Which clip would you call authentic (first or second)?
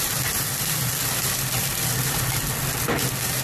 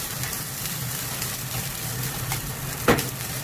first